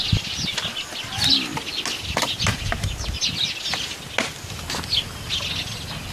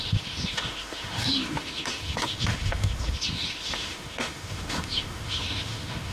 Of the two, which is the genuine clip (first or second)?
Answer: first